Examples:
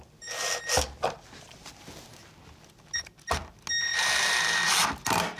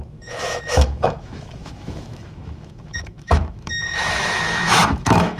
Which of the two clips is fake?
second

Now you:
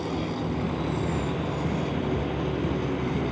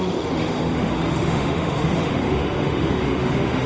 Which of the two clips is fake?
second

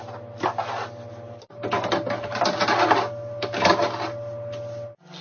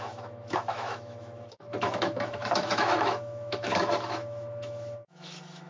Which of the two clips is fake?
second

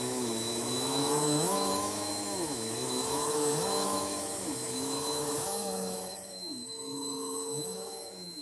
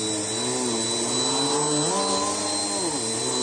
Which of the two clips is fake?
first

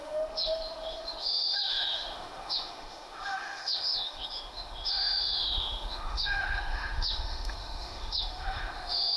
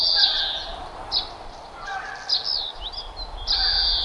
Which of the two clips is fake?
first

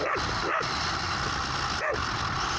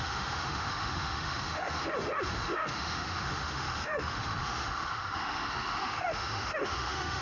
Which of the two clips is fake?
second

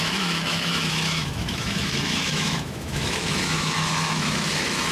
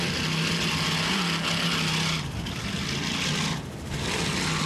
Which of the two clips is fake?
first